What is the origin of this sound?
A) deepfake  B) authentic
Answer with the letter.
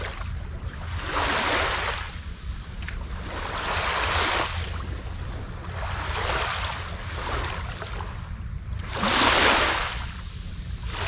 B